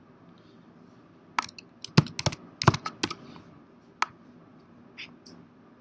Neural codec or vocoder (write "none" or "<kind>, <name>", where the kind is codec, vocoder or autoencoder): none